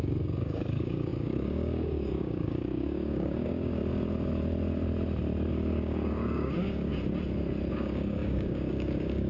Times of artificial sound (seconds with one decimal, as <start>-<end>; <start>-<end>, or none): 0.0-3.8; 5.5-6.9; 7.7-9.3